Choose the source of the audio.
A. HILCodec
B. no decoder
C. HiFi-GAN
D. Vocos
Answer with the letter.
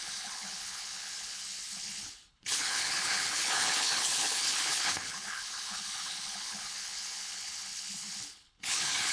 A